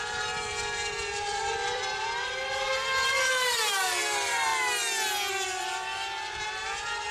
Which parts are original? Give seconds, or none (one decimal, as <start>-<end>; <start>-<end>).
4.5-5.3